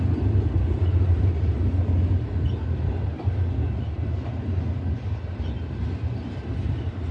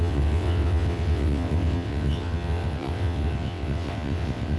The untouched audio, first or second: first